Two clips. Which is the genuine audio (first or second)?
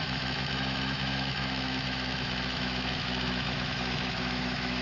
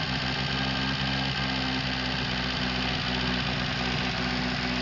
second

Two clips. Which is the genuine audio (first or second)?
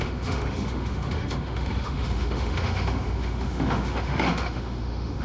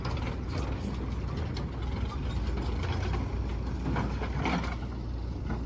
second